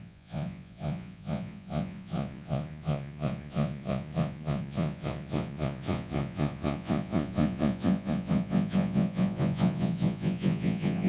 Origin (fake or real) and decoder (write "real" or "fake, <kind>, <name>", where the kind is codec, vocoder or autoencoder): fake, vocoder, Vocos